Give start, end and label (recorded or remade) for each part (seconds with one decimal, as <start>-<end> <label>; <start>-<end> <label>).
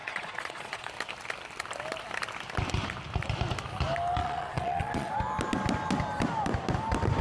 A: 0.0-0.9 remade; 0.9-4.2 recorded; 4.2-5.1 remade; 5.1-7.2 recorded